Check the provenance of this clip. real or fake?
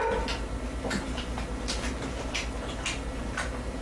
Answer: real